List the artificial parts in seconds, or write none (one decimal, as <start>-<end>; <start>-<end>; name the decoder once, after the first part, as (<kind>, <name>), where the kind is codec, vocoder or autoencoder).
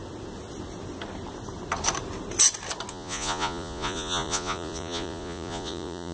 2.9-6.1 (vocoder, Vocos)